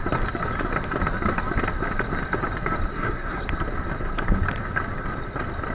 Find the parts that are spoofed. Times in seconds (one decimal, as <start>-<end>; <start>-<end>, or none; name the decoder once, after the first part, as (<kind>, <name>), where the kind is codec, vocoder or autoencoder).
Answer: 2.9-3.4 (codec, SNAC)